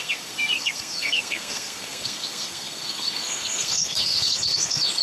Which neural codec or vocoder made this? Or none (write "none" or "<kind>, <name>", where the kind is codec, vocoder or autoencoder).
codec, SNAC